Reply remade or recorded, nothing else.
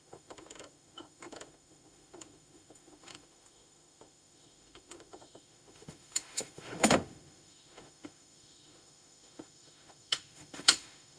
remade